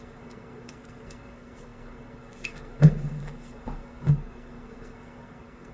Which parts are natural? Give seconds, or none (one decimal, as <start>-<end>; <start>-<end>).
none